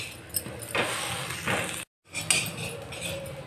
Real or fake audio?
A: real